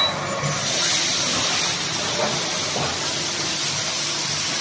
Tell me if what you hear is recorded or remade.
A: recorded